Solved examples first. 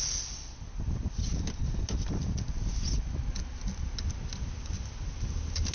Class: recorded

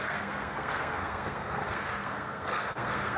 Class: remade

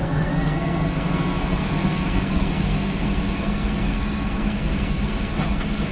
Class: remade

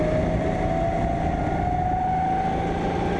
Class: recorded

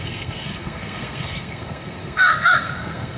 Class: remade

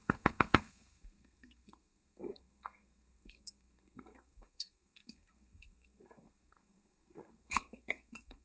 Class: remade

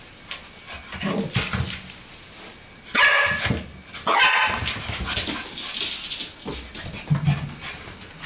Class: recorded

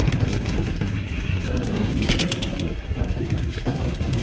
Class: remade